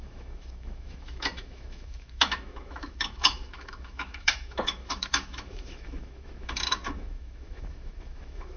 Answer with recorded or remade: remade